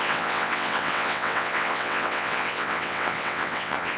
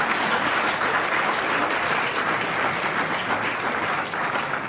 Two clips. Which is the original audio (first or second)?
second